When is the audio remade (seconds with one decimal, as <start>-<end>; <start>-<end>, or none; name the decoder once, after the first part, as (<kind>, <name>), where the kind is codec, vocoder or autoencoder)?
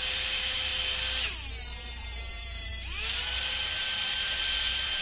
0.0-0.7 (vocoder, BigVGAN v2); 2.0-2.7; 3.2-5.0